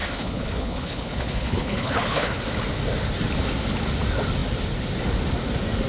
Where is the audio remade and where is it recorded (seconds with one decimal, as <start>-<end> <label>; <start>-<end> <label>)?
0.0-2.4 remade; 2.4-5.9 recorded